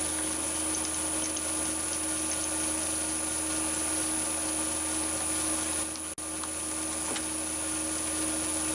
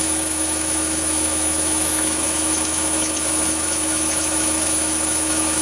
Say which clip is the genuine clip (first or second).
first